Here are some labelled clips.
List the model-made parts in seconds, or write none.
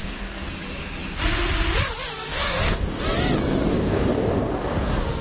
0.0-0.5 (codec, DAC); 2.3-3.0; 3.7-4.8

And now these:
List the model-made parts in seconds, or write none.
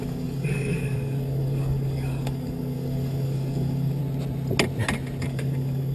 0.0-4.0 (codec, DAC); 5.2-5.9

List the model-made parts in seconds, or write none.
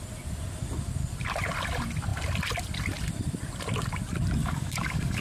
4.4-5.2 (codec, DAC)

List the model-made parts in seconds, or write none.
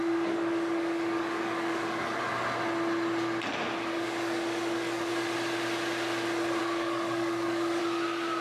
0.0-2.3 (codec, DAC); 3.9-5.1; 6.6-7.8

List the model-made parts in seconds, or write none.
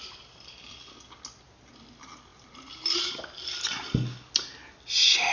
none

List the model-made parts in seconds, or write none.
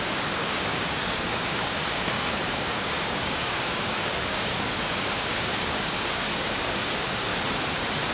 0.0-7.3 (codec, DAC)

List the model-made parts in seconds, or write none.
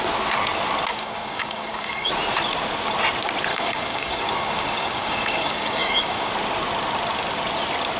0.9-2.1 (codec, DAC); 3.5-6.3